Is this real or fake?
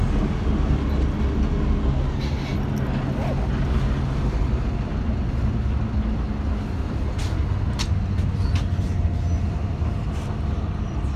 real